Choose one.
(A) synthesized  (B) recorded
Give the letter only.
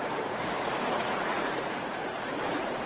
A